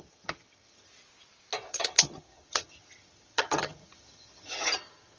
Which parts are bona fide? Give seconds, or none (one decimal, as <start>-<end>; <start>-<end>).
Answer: 0.9-1.7